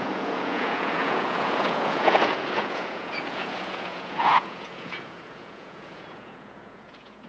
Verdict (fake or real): fake